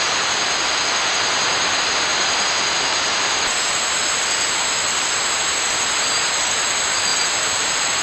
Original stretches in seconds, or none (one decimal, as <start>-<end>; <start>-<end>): 0.0-2.1; 3.4-7.1